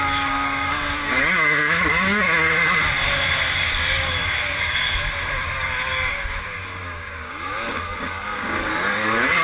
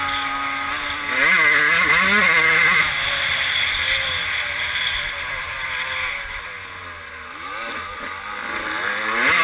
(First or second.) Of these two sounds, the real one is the second